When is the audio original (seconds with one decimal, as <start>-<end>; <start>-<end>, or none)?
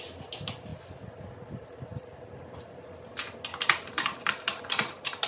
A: 0.0-5.3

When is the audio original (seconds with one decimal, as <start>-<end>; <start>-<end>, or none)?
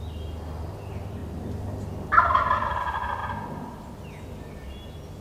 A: 0.0-5.2